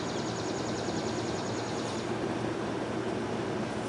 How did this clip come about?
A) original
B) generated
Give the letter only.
A